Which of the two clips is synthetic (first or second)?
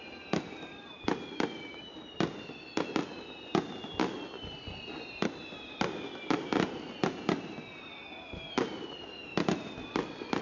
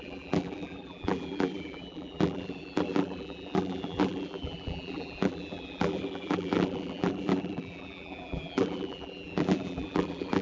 second